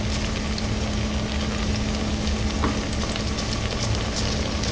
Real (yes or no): yes